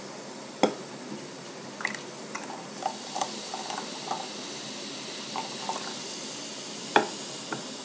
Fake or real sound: real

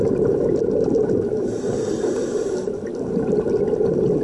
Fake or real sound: real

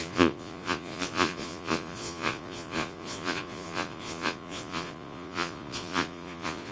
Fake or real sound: fake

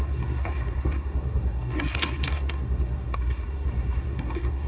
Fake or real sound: fake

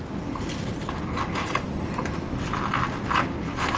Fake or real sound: real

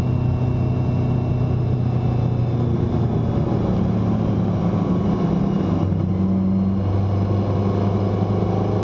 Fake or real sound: real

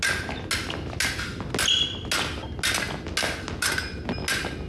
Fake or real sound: real